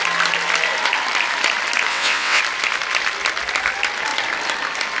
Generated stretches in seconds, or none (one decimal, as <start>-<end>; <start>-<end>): 1.9-2.4